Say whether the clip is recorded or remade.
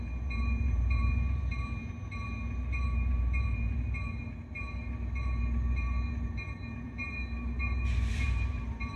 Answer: remade